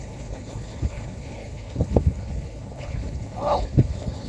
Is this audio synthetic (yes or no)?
yes